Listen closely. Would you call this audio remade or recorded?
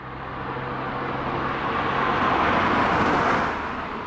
recorded